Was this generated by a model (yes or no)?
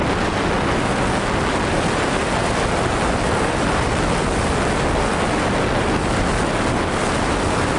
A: no